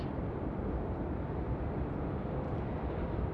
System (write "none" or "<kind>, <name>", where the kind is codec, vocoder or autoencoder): vocoder, BigVGAN v2